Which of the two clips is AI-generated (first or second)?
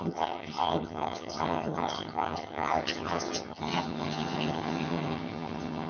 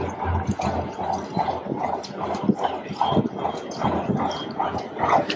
first